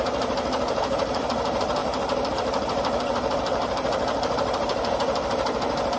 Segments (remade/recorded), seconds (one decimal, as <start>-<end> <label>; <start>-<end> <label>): 0.0-6.0 remade